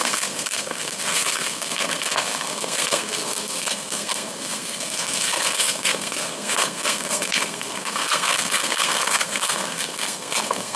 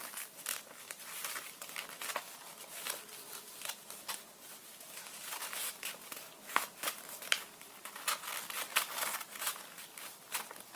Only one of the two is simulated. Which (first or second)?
first